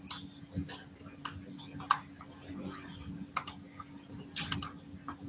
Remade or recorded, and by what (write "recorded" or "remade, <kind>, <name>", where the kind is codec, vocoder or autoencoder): recorded